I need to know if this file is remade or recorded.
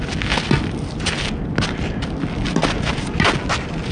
recorded